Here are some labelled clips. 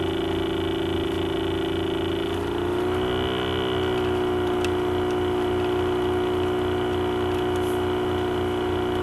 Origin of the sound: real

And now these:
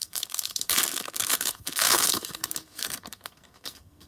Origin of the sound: fake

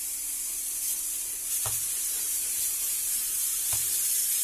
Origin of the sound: fake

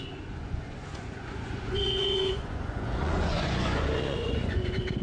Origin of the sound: fake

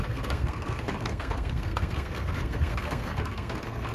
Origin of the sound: fake